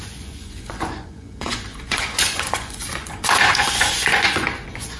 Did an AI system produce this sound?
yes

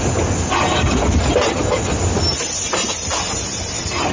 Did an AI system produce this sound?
no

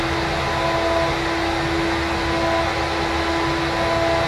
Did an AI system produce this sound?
no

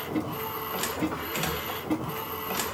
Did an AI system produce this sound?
no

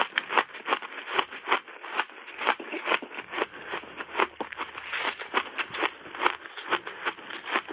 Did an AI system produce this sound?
no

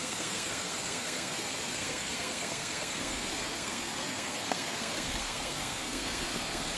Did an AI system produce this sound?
yes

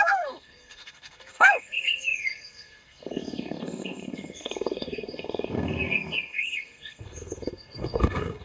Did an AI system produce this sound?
yes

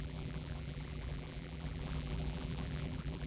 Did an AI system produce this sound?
yes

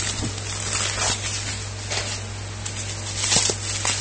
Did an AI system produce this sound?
no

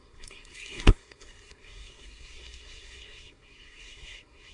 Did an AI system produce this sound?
yes